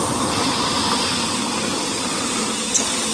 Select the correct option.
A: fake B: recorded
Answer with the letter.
B